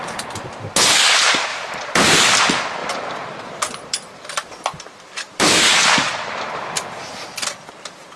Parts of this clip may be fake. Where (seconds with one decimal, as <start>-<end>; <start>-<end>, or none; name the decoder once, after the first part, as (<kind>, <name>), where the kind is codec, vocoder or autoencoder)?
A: 1.5-2.4 (vocoder, BigVGAN v2); 2.8-7.7